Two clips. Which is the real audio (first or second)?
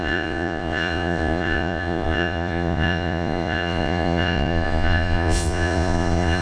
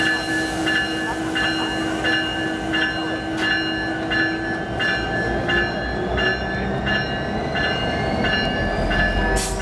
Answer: second